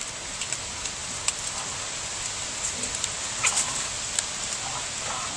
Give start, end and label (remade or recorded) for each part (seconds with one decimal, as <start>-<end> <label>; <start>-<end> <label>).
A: 0.0-5.4 recorded